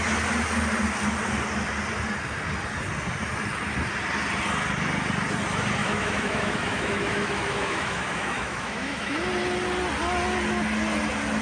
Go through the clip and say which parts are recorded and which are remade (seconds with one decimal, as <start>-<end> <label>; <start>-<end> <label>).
0.0-5.8 recorded; 5.8-9.3 remade; 9.3-11.4 recorded